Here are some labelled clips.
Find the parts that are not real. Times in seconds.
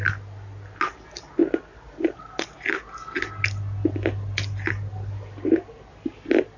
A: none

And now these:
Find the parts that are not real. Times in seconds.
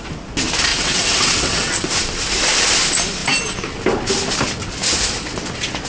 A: 0.7-1.9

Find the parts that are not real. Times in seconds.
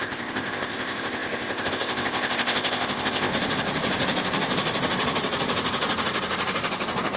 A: 0.0-3.3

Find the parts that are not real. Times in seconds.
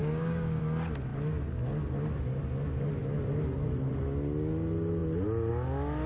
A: 0.0-0.6